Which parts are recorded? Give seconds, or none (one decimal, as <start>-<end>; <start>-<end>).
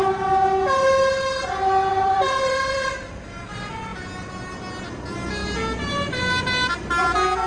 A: 0.0-1.9; 3.1-7.5